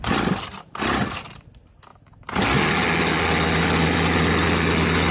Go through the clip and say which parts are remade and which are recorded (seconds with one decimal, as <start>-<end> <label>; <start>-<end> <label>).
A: 0.0-5.1 recorded

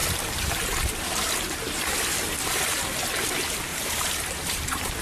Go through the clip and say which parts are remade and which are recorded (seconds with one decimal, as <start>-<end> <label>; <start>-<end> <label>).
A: 0.0-3.7 recorded; 3.7-5.0 remade